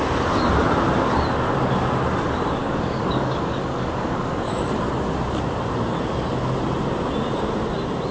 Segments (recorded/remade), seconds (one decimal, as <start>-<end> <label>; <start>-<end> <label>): 0.0-2.6 recorded; 2.6-4.7 remade; 4.7-8.1 recorded